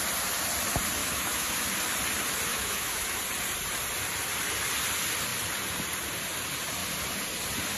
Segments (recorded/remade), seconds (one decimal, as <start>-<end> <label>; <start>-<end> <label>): 0.0-1.0 recorded; 1.0-1.5 remade; 1.5-2.5 recorded; 2.5-3.2 remade; 3.2-7.8 recorded